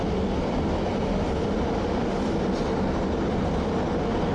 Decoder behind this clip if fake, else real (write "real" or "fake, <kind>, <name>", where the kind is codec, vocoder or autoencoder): real